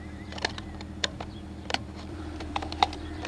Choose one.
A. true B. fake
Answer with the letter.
B